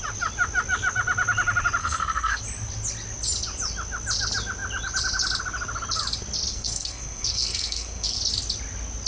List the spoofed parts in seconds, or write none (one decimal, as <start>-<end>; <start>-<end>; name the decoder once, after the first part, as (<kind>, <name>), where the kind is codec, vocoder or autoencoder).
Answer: 1.8-2.4 (codec, SNAC); 6.5-8.2